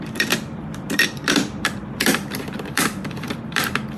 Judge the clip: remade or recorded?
remade